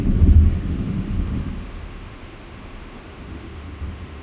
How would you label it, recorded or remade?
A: remade